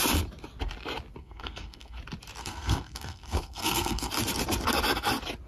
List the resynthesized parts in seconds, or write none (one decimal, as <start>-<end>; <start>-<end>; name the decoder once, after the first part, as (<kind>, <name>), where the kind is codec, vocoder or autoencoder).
1.2-2.0 (codec, SNAC); 2.4-4.1